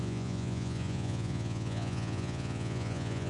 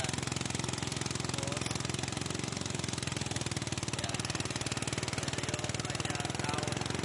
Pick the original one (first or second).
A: second